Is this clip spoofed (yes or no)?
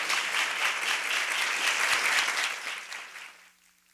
no